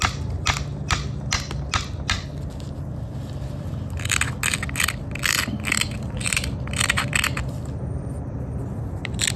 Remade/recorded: recorded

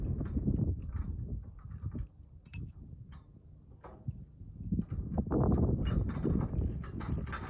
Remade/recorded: recorded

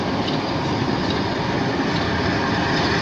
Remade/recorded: recorded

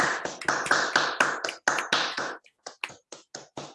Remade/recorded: recorded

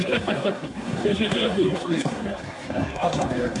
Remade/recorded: remade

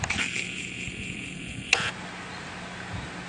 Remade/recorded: recorded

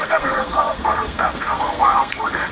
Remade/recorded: remade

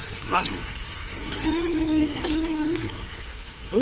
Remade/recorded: remade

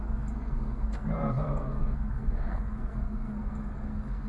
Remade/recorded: remade